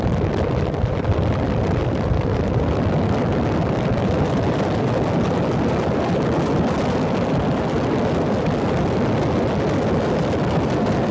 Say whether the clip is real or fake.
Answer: real